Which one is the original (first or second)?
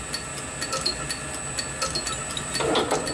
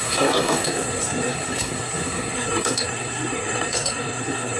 first